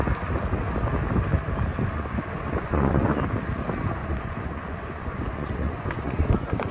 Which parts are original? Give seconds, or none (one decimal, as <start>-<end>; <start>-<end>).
0.0-1.7; 3.2-4.0